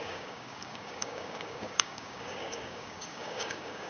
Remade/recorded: remade